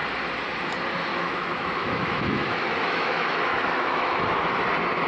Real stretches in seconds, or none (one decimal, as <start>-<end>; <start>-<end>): 0.0-1.1; 4.2-5.1